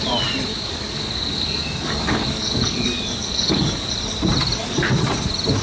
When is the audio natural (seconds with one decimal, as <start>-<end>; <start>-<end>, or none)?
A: 0.0-0.5; 3.9-5.6